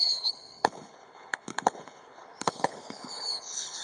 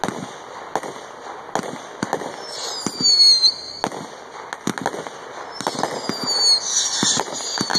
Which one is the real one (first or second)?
second